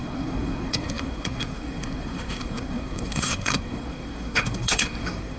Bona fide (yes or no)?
no